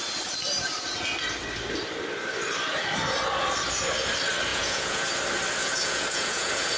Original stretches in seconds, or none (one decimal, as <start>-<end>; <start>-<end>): 0.0-4.5; 5.1-5.6